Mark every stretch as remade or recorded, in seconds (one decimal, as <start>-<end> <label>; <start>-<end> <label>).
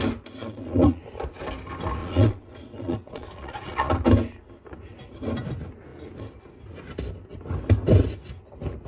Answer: 0.0-0.4 recorded; 0.4-1.0 remade; 1.0-2.0 recorded; 2.0-3.9 remade; 3.9-8.9 recorded